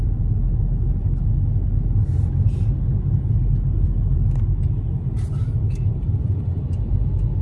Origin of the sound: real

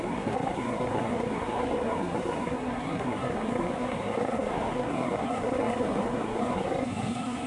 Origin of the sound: fake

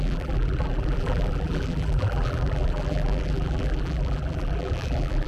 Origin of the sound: fake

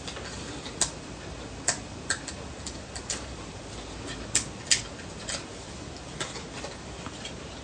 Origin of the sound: real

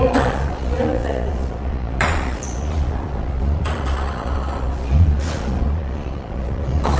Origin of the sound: fake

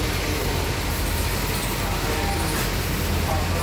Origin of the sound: real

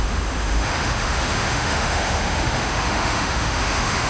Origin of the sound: fake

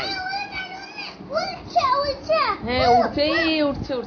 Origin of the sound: real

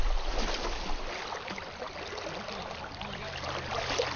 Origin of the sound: real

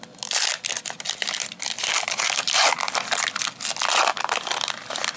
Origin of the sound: real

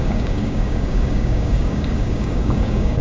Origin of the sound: fake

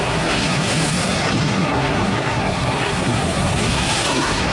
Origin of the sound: fake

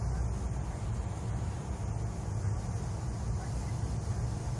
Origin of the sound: real